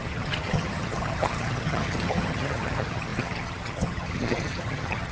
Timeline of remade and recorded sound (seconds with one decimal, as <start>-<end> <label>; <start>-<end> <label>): 0.0-5.1 remade